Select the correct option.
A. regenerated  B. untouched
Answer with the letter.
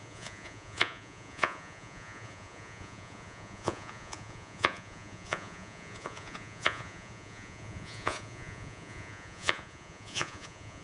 A